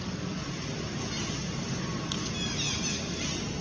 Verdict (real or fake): real